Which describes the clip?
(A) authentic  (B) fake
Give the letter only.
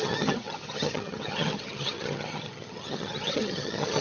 B